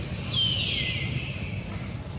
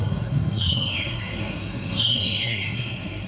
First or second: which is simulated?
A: second